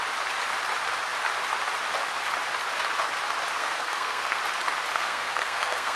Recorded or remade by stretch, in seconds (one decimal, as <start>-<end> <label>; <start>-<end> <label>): 0.0-3.6 recorded; 3.6-4.4 remade; 4.4-4.9 recorded; 4.9-6.0 remade